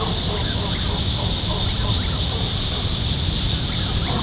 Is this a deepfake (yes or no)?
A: no